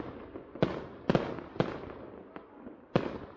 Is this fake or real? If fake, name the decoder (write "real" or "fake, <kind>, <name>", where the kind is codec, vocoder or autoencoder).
real